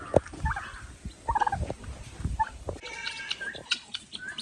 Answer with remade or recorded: recorded